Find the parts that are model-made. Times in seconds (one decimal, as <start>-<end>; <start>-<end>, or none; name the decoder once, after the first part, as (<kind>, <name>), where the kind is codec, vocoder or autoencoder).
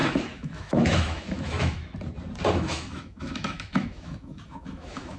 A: 0.0-1.8 (autoencoder, DAC-VAE); 2.5-5.2